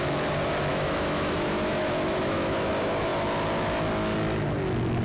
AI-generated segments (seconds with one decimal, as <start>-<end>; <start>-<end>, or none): 0.7-2.7